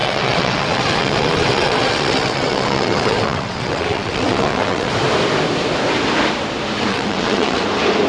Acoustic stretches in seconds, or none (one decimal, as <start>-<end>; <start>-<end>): 4.9-6.9; 7.6-8.1